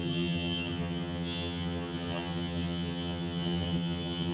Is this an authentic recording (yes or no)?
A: no